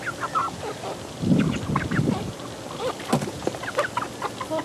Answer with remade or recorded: recorded